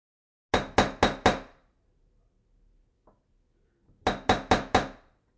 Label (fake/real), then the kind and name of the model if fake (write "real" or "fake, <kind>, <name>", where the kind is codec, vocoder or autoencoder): real